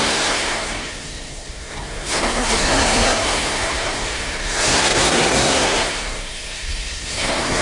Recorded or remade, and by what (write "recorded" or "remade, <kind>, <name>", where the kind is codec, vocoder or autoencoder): remade, codec, SNAC